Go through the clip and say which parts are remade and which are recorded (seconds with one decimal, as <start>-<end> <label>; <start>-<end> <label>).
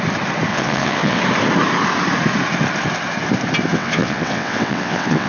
0.0-0.5 recorded; 0.5-1.2 remade; 1.2-3.7 recorded; 3.7-5.3 remade